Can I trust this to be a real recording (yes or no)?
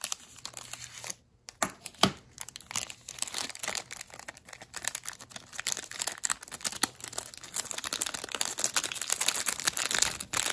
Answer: yes